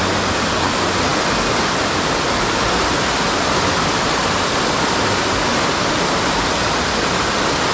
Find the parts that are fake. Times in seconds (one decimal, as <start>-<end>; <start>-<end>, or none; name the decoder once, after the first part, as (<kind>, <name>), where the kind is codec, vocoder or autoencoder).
none